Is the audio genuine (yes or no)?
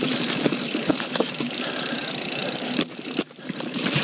no